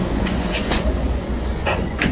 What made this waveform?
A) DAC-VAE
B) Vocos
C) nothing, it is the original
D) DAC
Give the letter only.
B